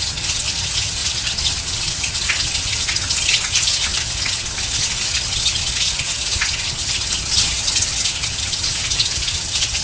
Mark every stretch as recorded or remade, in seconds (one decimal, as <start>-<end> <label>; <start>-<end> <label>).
0.0-9.8 remade